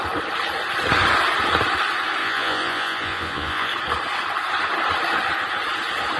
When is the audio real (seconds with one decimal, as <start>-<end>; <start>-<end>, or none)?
0.0-2.2; 3.7-6.2